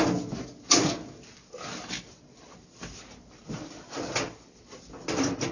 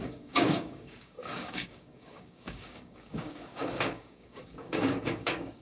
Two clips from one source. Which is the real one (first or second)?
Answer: first